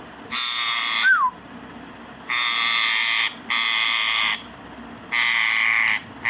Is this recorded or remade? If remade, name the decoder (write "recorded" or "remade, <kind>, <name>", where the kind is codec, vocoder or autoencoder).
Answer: recorded